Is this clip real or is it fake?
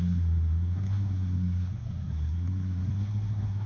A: fake